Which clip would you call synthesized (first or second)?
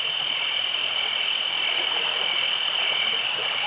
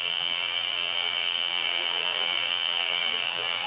second